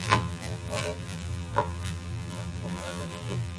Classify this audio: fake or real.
fake